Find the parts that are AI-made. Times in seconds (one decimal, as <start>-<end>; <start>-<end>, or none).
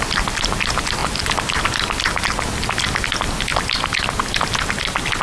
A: none